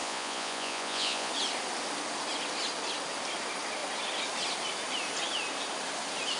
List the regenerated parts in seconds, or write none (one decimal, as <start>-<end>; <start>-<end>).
0.0-1.3